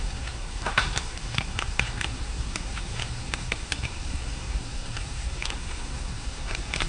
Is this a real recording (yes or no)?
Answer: no